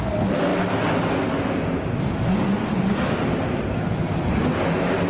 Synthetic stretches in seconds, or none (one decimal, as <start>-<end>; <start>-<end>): none

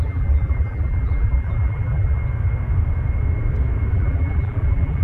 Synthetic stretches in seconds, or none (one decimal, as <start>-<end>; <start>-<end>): 0.0-2.2; 3.9-5.0

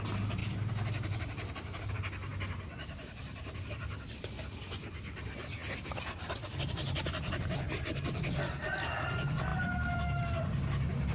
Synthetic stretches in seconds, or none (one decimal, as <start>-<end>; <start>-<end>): 0.4-1.9; 9.5-10.2

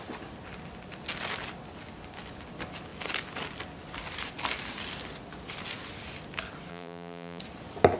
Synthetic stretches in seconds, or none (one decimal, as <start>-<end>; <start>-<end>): 6.7-7.4

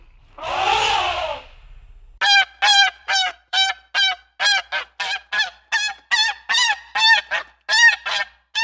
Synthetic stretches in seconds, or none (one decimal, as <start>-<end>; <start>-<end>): 2.7-3.7

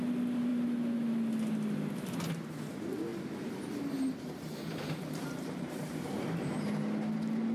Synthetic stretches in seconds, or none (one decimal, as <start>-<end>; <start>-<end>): 3.1-3.6; 4.5-6.5

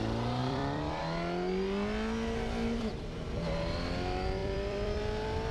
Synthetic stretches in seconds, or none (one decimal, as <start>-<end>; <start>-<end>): 0.4-1.0; 4.4-5.0